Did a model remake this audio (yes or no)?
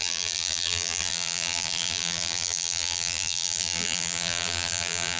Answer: yes